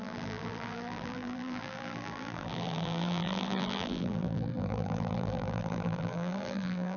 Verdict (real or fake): fake